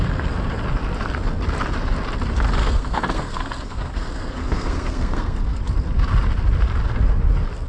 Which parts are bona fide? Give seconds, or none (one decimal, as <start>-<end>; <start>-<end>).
0.0-2.6; 5.6-7.7